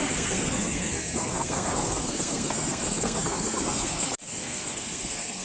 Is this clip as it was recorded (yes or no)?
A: no